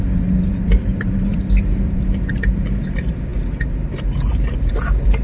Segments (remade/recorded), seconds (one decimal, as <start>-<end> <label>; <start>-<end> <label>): 0.0-5.2 remade